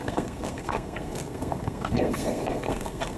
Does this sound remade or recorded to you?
remade